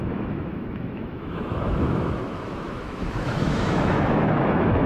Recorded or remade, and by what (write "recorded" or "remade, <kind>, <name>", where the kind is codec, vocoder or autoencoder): remade, autoencoder, DAC-VAE